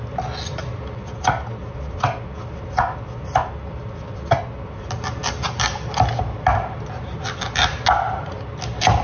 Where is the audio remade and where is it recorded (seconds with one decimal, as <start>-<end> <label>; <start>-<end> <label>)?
0.0-9.0 recorded